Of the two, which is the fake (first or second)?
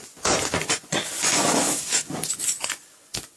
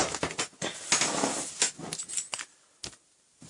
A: first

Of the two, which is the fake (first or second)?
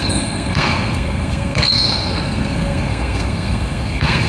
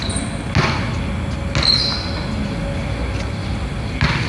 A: first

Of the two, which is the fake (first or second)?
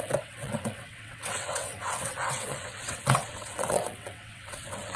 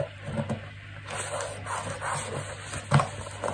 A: first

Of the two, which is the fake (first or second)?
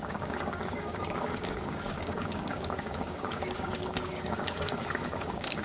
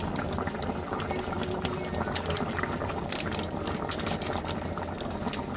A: first